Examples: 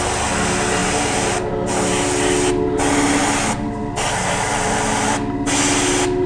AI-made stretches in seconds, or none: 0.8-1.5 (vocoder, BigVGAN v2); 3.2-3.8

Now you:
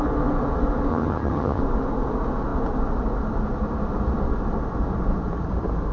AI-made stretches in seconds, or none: 0.9-1.6 (vocoder, HiFi-GAN)

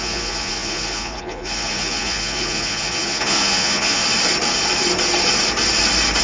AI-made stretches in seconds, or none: 0.0-4.0 (vocoder, Vocos)

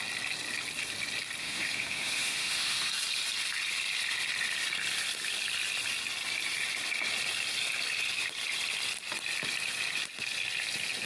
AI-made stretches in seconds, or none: 1.4-2.9 (autoencoder, DAC-VAE)

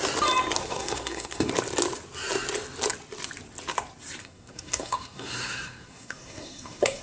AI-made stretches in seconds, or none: 0.6-1.5 (codec, SNAC); 4.2-7.0

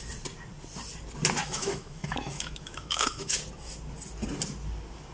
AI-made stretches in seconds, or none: 1.4-3.4 (autoencoder, DAC-VAE)

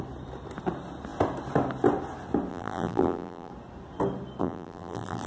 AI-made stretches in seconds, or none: 2.5-3.5 (vocoder, BigVGAN v2); 4.4-5.3